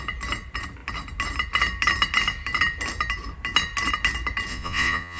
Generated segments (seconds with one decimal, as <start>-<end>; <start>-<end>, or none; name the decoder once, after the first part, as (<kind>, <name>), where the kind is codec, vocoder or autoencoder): 4.5-5.2 (vocoder, Vocos)